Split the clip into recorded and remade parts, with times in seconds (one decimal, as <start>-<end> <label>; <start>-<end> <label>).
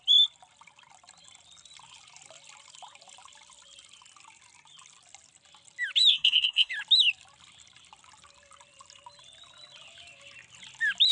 0.0-6.1 recorded; 6.1-6.7 remade; 6.7-11.1 recorded